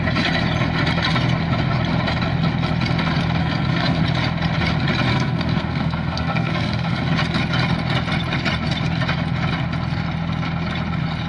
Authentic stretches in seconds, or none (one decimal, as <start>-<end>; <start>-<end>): 0.0-3.4; 4.0-5.1; 7.0-11.3